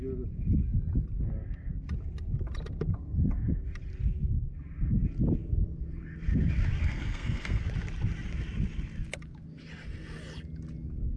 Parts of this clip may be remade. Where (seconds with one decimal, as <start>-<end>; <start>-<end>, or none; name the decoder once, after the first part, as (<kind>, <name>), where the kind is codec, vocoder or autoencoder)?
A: 6.8-7.6 (codec, SNAC)